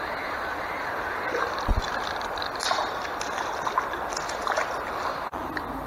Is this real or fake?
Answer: real